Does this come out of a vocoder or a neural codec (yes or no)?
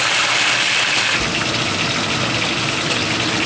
no